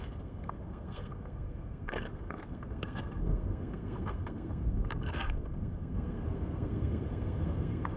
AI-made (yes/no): yes